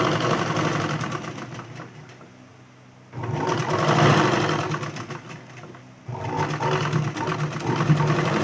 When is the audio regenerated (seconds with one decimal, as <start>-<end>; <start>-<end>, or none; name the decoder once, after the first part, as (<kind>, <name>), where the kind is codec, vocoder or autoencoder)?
none